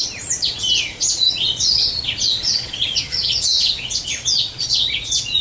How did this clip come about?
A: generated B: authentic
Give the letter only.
A